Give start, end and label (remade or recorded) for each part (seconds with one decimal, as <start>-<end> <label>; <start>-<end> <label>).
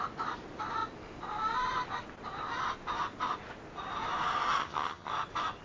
0.0-4.6 recorded; 4.6-5.1 remade; 5.1-5.6 recorded